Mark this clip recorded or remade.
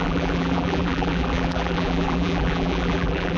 remade